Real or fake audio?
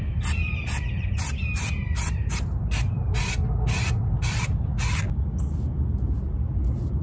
real